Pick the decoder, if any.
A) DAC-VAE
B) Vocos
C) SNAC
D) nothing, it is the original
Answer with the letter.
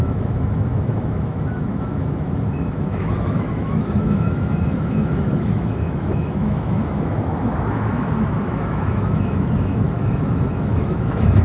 A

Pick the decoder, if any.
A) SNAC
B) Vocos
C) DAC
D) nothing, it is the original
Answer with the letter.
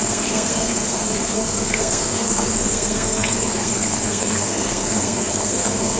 A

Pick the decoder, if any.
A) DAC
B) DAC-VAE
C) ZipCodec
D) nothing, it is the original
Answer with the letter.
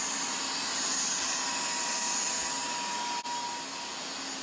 D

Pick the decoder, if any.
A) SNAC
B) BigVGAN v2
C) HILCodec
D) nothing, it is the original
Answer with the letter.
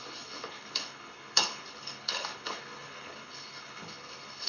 C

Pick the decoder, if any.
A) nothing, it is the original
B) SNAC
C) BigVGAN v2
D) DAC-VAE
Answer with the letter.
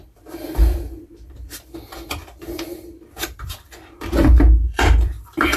C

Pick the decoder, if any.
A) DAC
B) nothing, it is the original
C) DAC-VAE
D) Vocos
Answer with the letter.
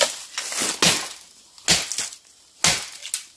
B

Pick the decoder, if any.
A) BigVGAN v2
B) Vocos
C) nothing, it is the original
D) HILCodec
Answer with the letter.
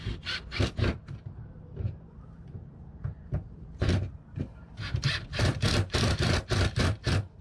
A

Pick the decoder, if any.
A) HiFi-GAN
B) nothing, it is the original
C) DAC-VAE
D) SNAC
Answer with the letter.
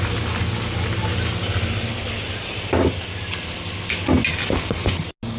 B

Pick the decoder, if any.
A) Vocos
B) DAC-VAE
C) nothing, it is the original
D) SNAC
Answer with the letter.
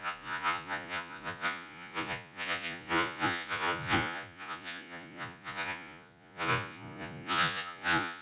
A